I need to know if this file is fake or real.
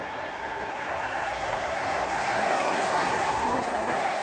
fake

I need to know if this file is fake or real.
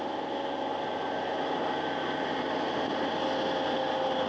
real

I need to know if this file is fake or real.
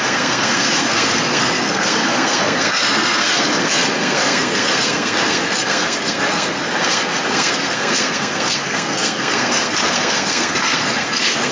fake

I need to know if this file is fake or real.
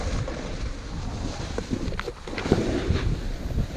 real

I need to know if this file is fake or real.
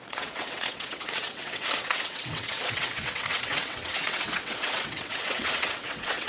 fake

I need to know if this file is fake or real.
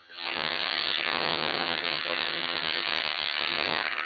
fake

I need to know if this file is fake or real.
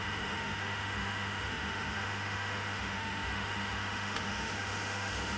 fake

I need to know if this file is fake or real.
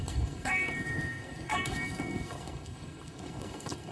fake